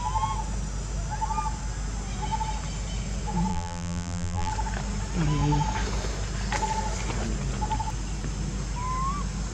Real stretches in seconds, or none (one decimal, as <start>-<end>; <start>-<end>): 0.0-3.5; 4.5-9.5

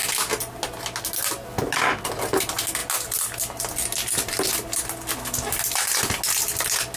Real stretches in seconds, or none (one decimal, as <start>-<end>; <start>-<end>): 0.0-7.0

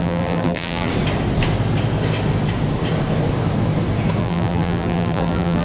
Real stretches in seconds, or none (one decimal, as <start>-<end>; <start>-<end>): 0.9-4.2

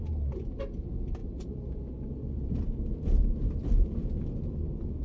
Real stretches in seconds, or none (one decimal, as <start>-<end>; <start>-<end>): 0.0-1.2; 4.2-5.0

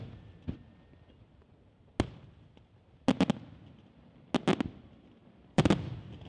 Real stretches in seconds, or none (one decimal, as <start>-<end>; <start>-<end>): 0.0-5.2

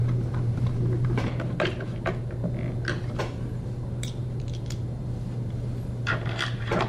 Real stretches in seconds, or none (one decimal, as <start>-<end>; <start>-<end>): 2.4-3.2